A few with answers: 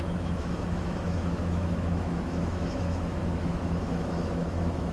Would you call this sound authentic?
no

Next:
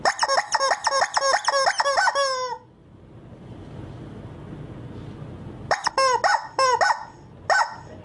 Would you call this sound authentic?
yes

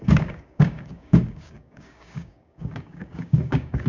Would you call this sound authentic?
no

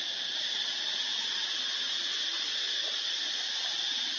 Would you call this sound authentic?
yes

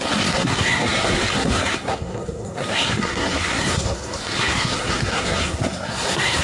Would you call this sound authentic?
no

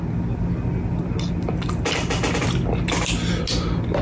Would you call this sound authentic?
yes